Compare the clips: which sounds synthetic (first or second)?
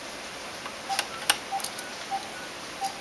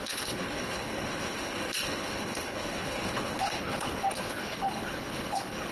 second